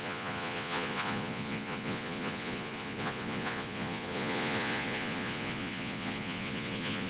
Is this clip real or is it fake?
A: fake